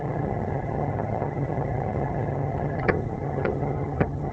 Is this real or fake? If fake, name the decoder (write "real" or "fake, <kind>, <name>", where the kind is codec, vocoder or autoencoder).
fake, vocoder, HiFi-GAN